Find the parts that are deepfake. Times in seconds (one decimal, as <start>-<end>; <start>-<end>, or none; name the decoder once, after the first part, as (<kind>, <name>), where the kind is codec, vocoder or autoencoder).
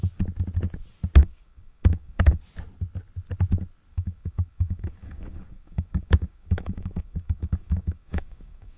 1.2-2.4 (codec, DAC); 3.9-8.8